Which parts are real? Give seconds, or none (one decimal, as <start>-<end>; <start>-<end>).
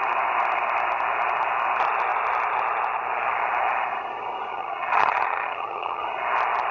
0.0-4.5; 6.0-6.7